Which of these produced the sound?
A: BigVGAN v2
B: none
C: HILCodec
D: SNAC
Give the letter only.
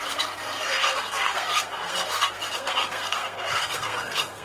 D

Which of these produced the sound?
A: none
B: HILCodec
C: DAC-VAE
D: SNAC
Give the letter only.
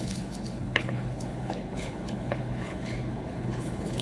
B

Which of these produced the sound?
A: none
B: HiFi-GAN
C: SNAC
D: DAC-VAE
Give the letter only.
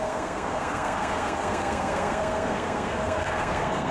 C